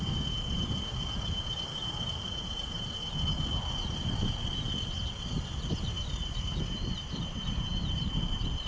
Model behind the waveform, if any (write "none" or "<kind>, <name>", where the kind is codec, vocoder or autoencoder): none